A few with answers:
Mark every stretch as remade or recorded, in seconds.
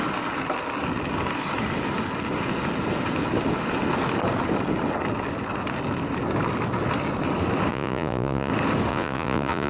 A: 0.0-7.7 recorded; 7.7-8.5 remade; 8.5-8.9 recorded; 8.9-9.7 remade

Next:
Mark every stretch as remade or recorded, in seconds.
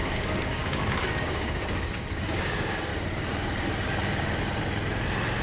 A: 0.0-2.9 remade; 2.9-5.4 recorded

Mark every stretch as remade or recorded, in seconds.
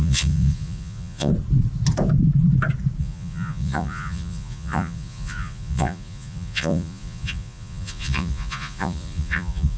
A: 0.0-1.3 remade; 1.3-3.0 recorded; 3.0-9.8 remade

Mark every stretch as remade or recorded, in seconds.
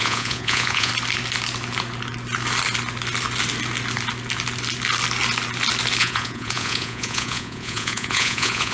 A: 0.0-0.9 remade; 0.9-6.0 recorded; 6.0-8.7 remade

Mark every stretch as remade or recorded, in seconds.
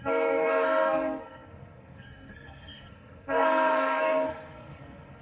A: 0.0-5.2 remade